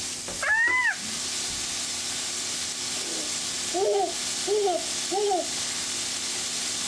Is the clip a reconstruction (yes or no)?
no